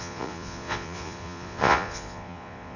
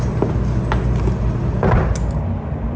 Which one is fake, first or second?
first